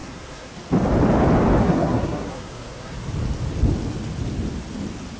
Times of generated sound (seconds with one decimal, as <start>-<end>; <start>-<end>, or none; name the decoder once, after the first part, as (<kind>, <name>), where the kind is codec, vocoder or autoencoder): 0.0-0.5 (codec, SNAC); 1.6-3.1